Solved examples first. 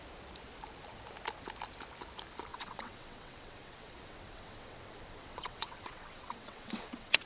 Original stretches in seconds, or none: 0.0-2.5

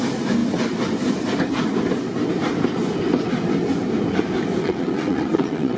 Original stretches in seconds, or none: 0.0-4.6

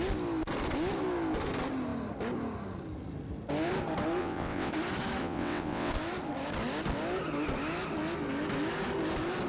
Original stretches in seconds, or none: 0.0-4.2; 4.7-5.2; 5.9-9.5

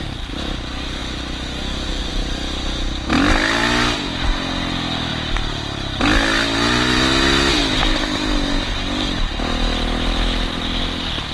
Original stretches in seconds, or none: 0.0-11.3

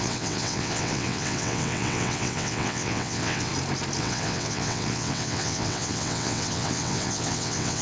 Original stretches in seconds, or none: 3.5-4.0